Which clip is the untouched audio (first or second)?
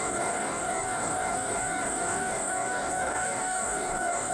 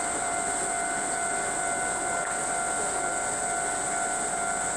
second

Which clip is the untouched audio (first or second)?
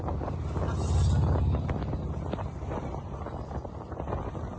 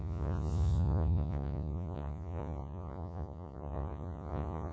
first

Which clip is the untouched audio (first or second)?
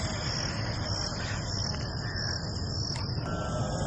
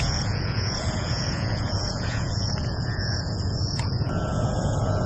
first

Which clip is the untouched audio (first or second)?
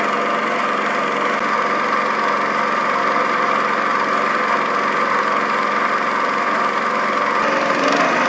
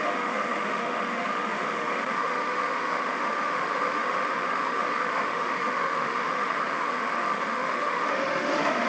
first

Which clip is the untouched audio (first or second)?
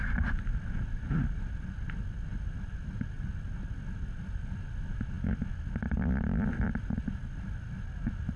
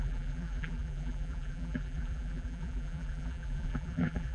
first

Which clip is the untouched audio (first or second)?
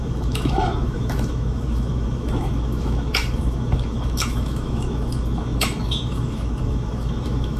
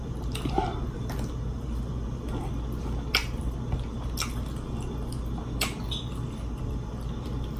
second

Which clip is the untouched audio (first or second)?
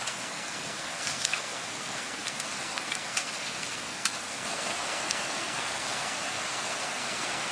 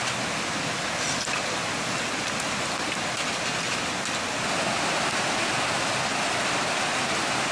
second